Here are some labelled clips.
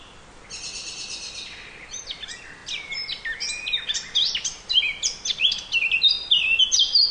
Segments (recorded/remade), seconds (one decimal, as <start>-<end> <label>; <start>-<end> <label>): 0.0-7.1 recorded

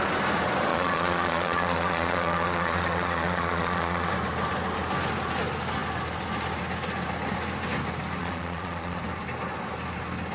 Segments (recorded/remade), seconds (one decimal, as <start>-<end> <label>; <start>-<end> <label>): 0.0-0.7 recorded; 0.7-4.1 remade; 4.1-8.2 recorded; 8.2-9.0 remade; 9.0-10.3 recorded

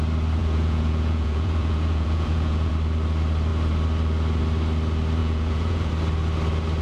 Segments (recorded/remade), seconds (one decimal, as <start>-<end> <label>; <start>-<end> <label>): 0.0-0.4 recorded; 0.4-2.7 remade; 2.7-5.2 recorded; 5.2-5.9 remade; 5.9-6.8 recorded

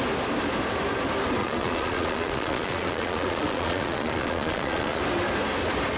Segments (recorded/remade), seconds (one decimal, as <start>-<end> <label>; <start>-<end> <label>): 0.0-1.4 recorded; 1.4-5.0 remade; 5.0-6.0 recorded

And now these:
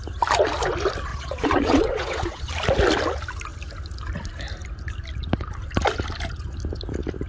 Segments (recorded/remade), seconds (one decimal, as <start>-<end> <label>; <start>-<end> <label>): 0.0-1.1 recorded; 1.1-2.5 remade; 2.5-7.3 recorded